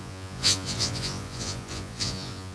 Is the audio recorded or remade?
remade